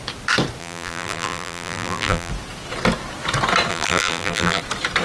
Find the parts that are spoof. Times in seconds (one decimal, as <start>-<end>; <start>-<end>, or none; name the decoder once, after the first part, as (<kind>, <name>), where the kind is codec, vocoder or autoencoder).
0.6-2.3 (vocoder, BigVGAN v2); 3.7-4.6